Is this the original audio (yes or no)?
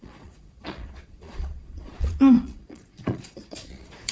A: no